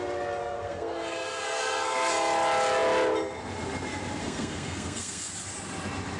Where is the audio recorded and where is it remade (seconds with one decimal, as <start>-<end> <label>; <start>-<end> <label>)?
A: 0.0-0.4 recorded; 0.4-2.1 remade; 2.1-4.2 recorded; 4.2-5.3 remade; 5.3-6.2 recorded